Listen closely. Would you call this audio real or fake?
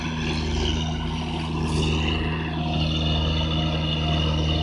real